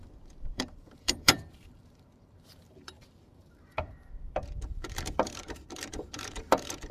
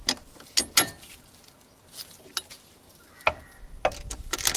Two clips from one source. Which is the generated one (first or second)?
first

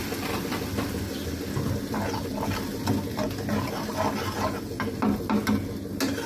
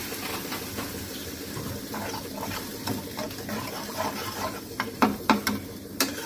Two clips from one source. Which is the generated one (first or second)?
second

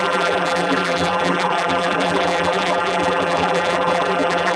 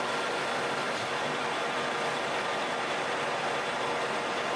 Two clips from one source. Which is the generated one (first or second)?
first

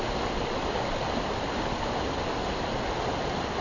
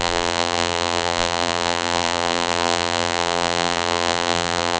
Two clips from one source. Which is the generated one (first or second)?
second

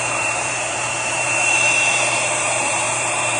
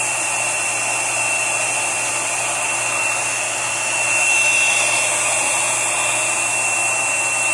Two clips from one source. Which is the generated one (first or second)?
first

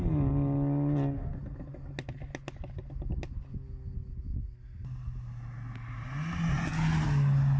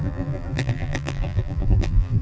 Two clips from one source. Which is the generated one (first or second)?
second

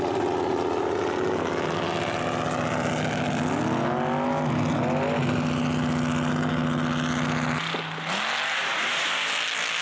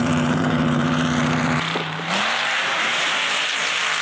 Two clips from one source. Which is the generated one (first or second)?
second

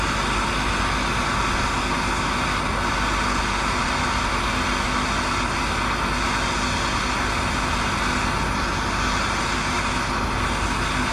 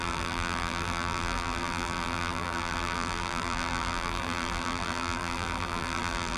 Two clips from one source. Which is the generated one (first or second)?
second